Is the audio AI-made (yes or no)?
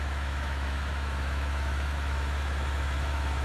yes